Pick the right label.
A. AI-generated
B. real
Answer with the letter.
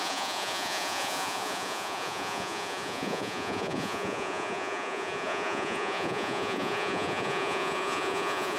A